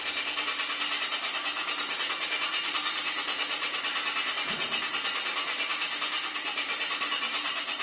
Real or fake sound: real